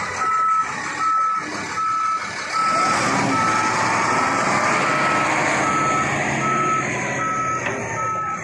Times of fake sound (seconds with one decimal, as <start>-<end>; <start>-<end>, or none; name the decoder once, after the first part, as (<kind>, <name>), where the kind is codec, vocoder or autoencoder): none